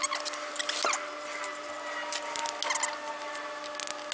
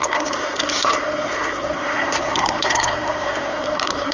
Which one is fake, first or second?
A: second